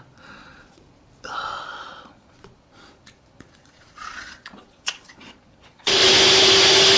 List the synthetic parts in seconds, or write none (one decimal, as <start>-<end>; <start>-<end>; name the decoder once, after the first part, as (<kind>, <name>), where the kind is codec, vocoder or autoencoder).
0.0-0.9 (vocoder, Vocos); 1.5-6.0